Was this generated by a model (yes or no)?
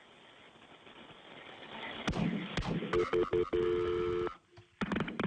no